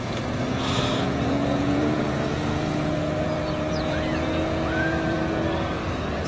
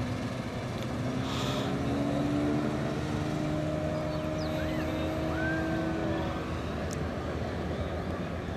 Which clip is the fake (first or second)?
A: first